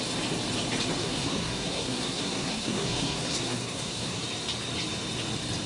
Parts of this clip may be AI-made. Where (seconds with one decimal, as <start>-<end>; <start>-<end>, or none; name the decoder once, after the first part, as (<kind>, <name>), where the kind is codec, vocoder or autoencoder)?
1.0-4.2 (codec, SNAC)